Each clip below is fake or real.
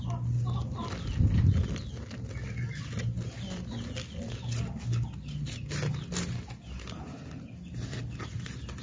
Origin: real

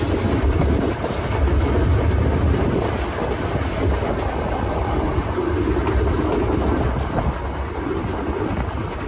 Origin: real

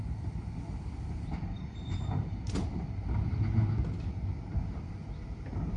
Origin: real